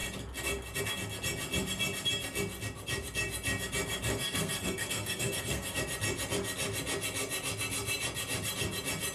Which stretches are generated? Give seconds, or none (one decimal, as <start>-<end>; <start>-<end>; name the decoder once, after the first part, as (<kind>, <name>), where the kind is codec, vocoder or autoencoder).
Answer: 4.1-5.8 (codec, SNAC)